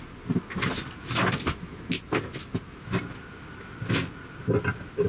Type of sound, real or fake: real